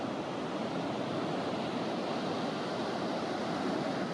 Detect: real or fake real